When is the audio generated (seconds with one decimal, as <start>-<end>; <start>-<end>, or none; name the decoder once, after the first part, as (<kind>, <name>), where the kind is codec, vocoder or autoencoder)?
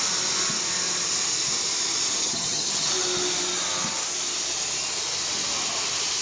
2.2-2.9 (vocoder, HiFi-GAN)